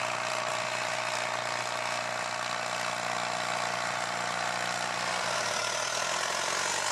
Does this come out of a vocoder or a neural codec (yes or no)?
no